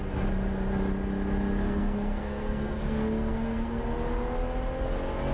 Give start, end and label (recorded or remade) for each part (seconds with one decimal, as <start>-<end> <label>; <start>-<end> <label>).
0.0-1.6 recorded; 1.6-3.8 remade; 3.8-5.3 recorded